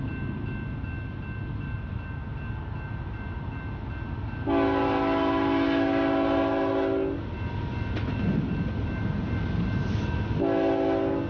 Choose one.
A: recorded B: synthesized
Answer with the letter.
A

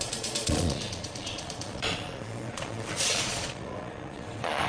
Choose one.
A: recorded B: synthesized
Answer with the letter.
B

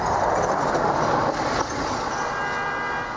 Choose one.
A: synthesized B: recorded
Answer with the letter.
B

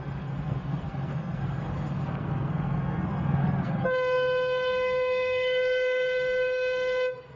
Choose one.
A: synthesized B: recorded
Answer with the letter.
A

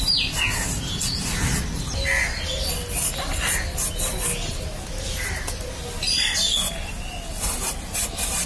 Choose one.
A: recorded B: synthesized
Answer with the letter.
A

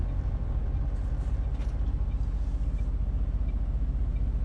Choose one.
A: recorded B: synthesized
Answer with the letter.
A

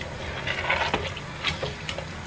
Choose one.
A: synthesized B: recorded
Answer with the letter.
B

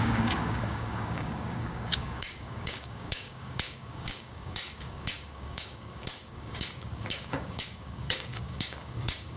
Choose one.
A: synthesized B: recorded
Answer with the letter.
A